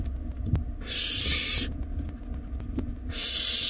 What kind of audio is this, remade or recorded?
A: recorded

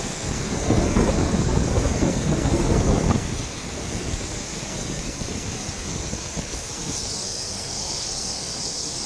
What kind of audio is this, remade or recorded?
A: remade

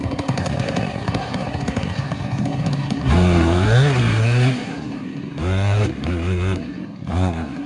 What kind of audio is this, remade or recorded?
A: remade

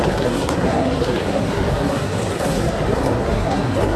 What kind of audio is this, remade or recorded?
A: remade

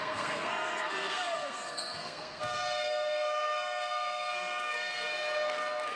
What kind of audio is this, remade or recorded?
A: remade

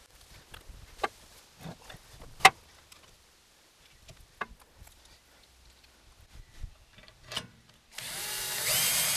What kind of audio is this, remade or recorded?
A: recorded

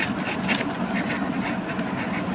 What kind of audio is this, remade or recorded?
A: recorded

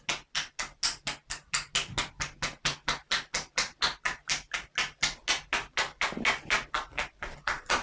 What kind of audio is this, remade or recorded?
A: recorded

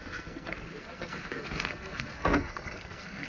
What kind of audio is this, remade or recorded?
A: remade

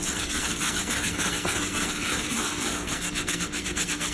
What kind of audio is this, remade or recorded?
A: remade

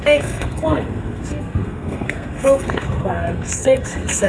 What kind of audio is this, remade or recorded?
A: remade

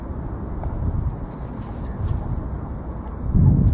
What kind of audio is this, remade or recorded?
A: recorded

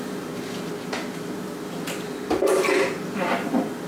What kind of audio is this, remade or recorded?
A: recorded